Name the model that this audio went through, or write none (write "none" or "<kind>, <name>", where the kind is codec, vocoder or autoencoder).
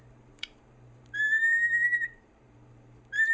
vocoder, BigVGAN v2